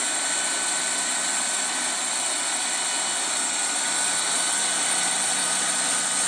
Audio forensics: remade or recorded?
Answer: recorded